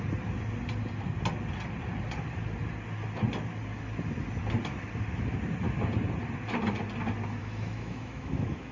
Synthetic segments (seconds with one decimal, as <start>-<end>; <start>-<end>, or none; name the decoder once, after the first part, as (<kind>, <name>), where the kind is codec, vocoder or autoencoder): 7.4-8.7 (autoencoder, DAC-VAE)